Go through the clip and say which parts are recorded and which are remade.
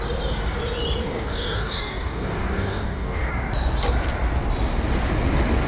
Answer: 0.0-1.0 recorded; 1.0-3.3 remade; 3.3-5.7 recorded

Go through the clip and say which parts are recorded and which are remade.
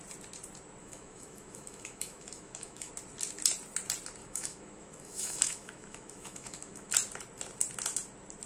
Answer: 0.0-0.8 recorded; 0.8-2.9 remade; 2.9-4.2 recorded; 4.2-6.9 remade; 6.9-8.5 recorded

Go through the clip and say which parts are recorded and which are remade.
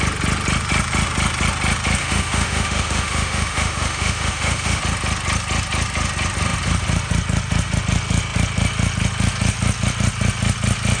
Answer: 0.0-2.0 recorded; 2.0-4.8 remade; 4.8-11.0 recorded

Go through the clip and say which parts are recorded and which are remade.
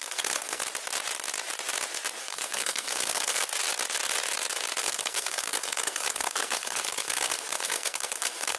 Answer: 0.0-0.6 remade; 0.6-2.2 recorded; 2.2-3.5 remade; 3.5-4.8 recorded; 4.8-8.6 remade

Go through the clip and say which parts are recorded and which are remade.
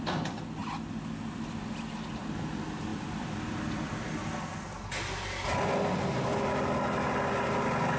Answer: 0.0-8.0 recorded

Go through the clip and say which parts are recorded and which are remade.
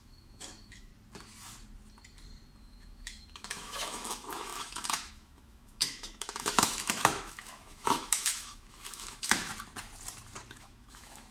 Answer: 0.0-0.9 remade; 0.9-2.6 recorded; 2.6-9.5 remade; 9.5-10.5 recorded; 10.5-11.3 remade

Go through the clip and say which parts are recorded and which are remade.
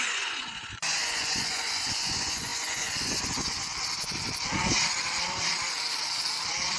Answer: 0.0-3.7 remade; 3.7-6.8 recorded